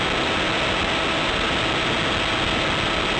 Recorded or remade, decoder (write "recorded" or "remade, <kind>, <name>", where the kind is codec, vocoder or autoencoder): recorded